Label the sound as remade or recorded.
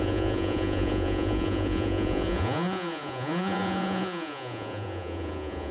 remade